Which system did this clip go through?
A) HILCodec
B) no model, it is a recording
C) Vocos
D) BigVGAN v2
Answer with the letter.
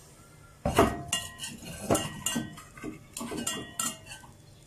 B